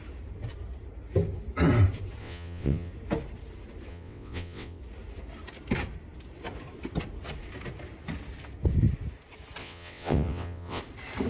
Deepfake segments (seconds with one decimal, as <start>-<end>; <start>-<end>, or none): 2.2-2.9; 3.9-4.8; 9.6-10.8